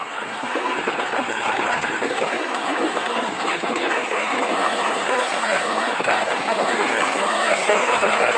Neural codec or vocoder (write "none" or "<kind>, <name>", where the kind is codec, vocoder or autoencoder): codec, SNAC